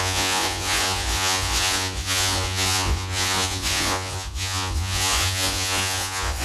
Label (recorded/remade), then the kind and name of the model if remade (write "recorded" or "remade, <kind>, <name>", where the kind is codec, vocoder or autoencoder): remade, vocoder, Vocos